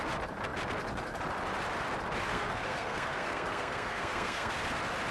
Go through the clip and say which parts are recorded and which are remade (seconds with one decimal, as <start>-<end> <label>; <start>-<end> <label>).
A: 0.0-2.3 recorded; 2.3-4.5 remade; 4.5-5.1 recorded